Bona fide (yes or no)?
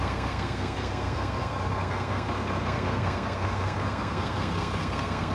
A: no